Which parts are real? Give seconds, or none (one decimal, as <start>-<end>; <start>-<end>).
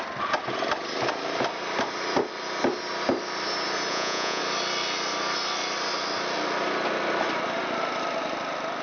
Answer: 0.0-3.9; 4.4-8.8